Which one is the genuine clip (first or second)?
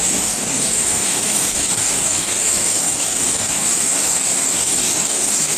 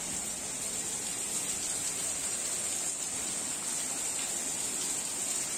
second